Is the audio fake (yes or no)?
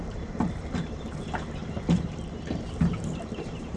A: yes